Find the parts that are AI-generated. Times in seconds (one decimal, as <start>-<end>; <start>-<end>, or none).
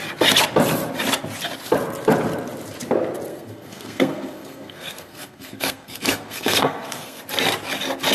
3.3-7.2